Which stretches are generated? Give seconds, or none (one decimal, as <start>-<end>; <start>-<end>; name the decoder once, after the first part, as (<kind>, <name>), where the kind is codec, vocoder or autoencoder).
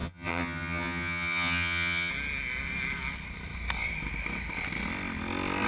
0.0-2.1 (vocoder, HiFi-GAN)